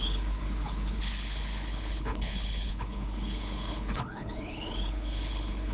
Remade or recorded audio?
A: remade